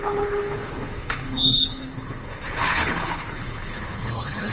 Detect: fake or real fake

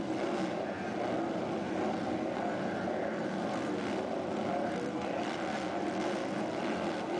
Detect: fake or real real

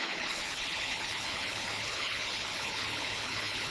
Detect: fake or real fake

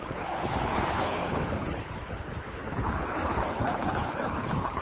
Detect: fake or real fake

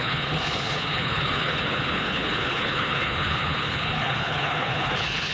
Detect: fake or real fake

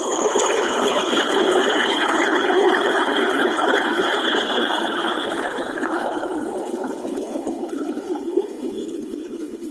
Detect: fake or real fake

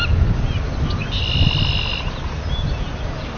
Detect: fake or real real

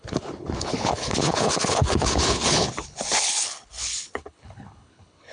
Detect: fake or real fake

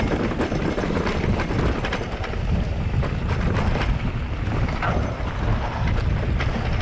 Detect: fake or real real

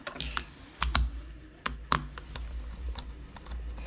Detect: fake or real real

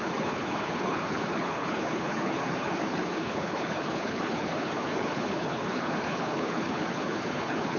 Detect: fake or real fake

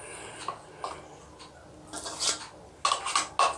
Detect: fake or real real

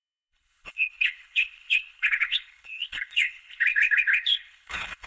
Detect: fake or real fake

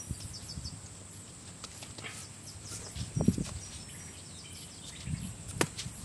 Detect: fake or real real